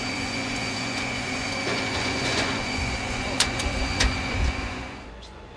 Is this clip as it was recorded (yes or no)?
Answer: no